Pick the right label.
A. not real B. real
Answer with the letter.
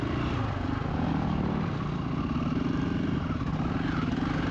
B